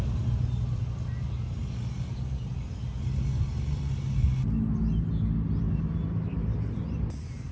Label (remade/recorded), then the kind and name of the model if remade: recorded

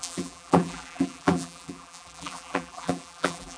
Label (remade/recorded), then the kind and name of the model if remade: remade, vocoder, BigVGAN v2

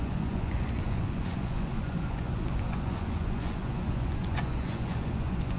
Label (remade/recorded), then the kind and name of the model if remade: remade, vocoder, Vocos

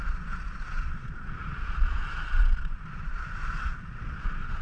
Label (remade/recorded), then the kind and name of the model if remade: remade, vocoder, Vocos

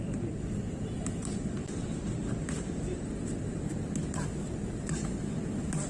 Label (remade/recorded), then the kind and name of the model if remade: recorded